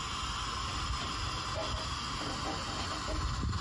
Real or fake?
real